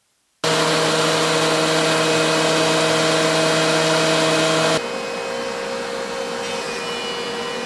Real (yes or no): yes